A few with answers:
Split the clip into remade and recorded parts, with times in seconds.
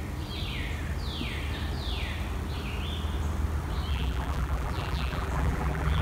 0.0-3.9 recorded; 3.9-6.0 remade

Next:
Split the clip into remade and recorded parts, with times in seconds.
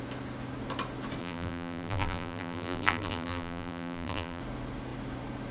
0.0-1.2 recorded; 1.2-4.4 remade; 4.4-5.5 recorded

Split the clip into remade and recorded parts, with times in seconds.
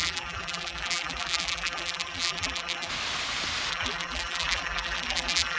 0.0-2.9 remade; 2.9-3.7 recorded; 3.7-5.6 remade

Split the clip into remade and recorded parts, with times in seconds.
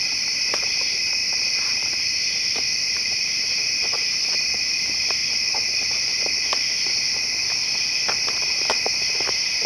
0.0-1.2 remade; 1.2-2.8 recorded; 2.8-5.2 remade; 5.2-8.9 recorded; 8.9-9.7 remade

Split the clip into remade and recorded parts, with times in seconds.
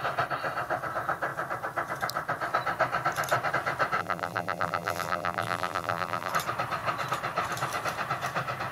0.0-4.0 recorded; 4.0-6.3 remade; 6.3-8.7 recorded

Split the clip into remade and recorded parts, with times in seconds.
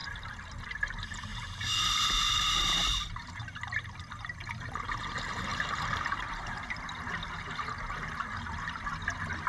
0.0-0.8 remade; 0.8-1.3 recorded; 1.3-3.3 remade; 3.3-5.5 recorded; 5.5-6.7 remade; 6.7-9.5 recorded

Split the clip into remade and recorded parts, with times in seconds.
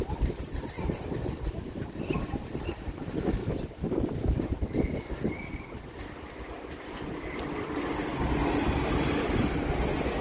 0.0-3.4 remade; 3.4-5.5 recorded; 5.5-8.0 remade; 8.0-10.2 recorded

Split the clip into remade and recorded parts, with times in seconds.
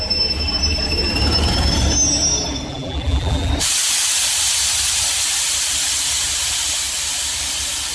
0.0-2.7 recorded; 2.7-3.5 remade; 3.5-7.9 recorded